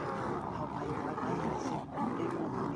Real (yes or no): yes